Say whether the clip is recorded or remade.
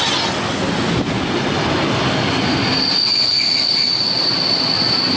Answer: recorded